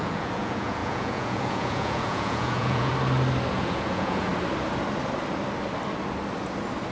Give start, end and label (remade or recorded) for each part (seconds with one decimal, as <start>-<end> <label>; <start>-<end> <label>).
0.0-2.9 remade; 2.9-3.5 recorded; 3.5-4.3 remade; 4.3-6.9 recorded